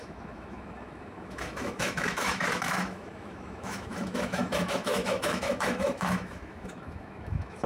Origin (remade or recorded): remade